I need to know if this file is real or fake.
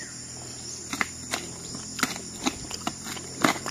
real